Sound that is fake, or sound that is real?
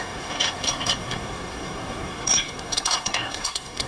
fake